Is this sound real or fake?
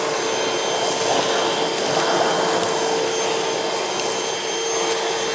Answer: real